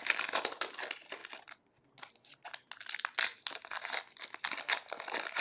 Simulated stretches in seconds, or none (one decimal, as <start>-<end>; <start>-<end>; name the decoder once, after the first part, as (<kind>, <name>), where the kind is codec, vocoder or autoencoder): none